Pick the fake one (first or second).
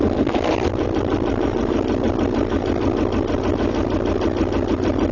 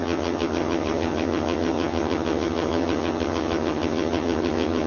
second